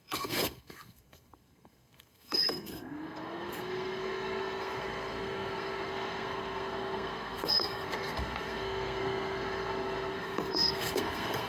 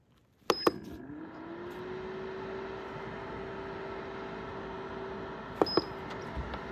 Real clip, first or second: second